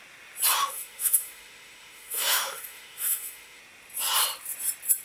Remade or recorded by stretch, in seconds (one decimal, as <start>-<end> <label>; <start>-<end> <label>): 0.0-0.6 recorded; 0.6-3.6 remade; 3.6-5.0 recorded